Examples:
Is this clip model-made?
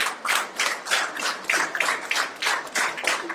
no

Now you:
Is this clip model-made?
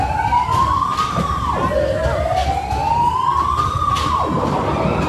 no